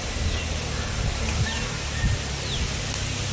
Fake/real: real